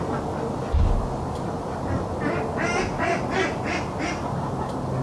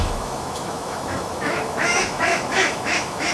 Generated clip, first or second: second